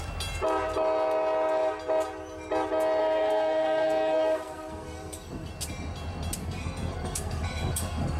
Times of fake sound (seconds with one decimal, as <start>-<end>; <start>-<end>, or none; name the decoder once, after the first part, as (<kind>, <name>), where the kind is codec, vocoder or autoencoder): 3.0-5.5 (codec, SNAC); 6.4-8.2